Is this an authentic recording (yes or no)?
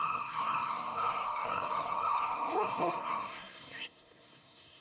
no